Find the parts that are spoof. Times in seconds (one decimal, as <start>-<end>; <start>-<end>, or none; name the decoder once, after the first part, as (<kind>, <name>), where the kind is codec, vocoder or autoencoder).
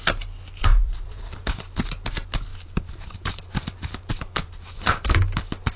0.7-1.4 (vocoder, BigVGAN v2); 2.5-5.2